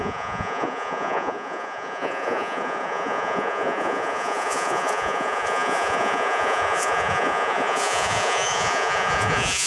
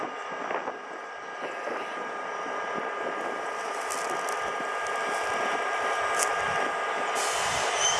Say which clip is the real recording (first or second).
second